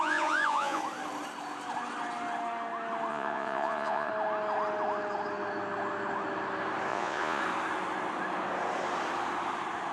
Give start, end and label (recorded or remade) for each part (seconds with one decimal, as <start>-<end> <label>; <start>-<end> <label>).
0.0-0.8 remade; 0.8-3.1 recorded; 3.1-4.1 remade; 4.1-6.9 recorded; 6.9-7.4 remade; 7.4-9.9 recorded